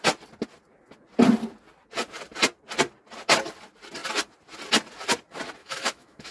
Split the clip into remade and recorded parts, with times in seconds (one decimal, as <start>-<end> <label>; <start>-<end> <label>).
0.0-5.6 recorded; 5.6-6.3 remade